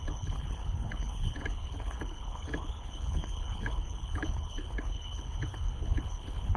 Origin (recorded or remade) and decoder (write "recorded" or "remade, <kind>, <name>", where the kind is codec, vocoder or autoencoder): remade, codec, HILCodec